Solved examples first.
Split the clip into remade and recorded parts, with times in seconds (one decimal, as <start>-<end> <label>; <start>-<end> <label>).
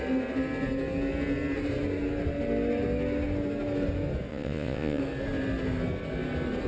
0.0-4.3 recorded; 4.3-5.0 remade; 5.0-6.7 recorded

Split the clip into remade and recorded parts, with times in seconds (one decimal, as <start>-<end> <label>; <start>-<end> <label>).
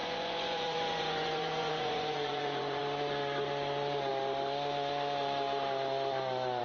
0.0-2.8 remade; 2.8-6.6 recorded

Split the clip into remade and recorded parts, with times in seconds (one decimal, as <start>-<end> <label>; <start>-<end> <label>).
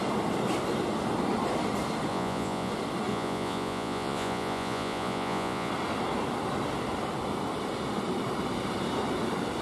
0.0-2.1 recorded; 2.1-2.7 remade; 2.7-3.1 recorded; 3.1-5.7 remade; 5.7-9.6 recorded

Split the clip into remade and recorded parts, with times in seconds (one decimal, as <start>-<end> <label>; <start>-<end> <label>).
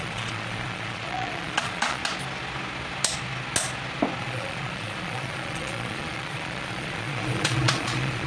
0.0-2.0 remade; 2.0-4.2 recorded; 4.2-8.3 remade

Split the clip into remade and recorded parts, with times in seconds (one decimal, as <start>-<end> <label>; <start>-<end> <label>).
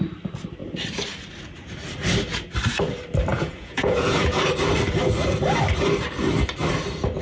0.0-3.3 recorded; 3.3-4.4 remade; 4.4-7.2 recorded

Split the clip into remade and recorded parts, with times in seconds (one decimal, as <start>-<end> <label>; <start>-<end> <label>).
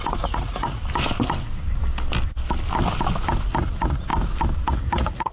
0.0-0.8 remade; 0.8-3.6 recorded; 3.6-4.1 remade; 4.1-4.7 recorded; 4.7-5.3 remade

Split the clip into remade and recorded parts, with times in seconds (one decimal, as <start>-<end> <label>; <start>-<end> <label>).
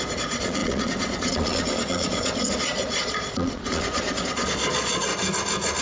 0.0-5.1 remade; 5.1-5.8 recorded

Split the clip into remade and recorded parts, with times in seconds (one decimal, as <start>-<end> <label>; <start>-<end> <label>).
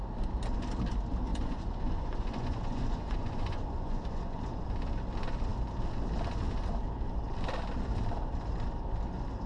0.0-1.3 recorded; 1.3-4.5 remade; 4.5-9.5 recorded